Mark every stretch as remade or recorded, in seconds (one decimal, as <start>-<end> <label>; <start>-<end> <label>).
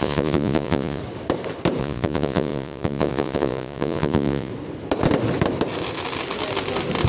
0.0-1.0 remade; 1.0-1.8 recorded; 1.8-4.5 remade; 4.5-7.1 recorded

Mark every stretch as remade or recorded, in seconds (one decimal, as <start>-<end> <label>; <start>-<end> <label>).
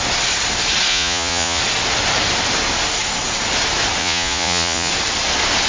0.0-0.9 recorded; 0.9-1.6 remade; 1.6-4.0 recorded; 4.0-4.9 remade; 4.9-5.7 recorded